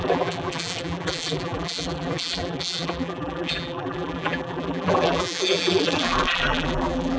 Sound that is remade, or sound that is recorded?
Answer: remade